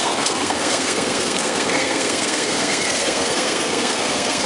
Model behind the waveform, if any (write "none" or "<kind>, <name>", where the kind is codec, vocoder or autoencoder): codec, SNAC